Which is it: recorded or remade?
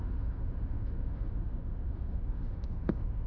remade